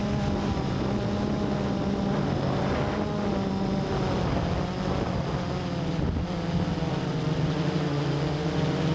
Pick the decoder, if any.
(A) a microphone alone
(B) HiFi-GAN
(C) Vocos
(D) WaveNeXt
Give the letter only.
A